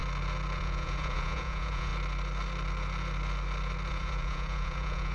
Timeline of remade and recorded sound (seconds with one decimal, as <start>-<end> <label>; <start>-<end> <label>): 0.0-0.6 recorded; 0.6-1.9 remade; 1.9-3.9 recorded; 3.9-5.1 remade